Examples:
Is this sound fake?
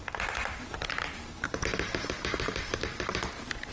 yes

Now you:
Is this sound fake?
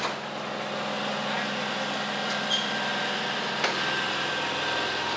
no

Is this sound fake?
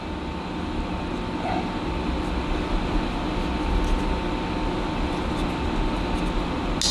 no